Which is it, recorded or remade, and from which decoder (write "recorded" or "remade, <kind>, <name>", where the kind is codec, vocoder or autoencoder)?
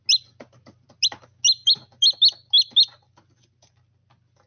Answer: recorded